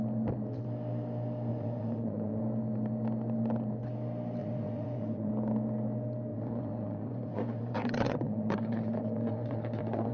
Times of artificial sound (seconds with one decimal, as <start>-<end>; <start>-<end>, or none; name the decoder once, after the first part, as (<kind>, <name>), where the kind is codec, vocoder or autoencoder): 1.5-2.4 (vocoder, Vocos); 4.4-5.3; 6.3-10.1